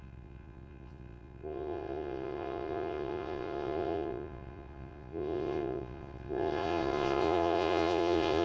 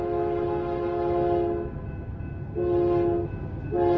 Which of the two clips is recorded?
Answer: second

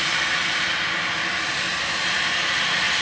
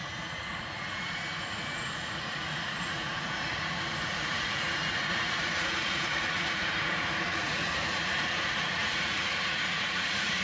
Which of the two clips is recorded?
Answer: first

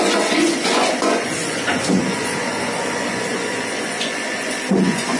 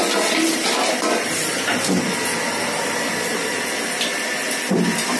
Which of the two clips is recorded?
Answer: second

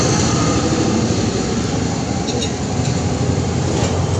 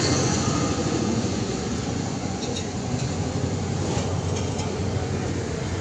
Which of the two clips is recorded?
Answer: first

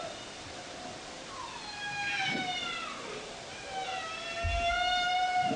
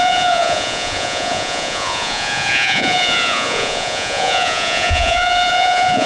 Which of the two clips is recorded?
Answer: first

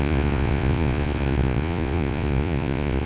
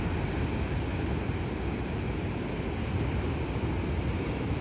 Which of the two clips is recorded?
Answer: second